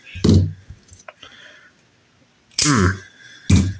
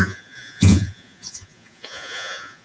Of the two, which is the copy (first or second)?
second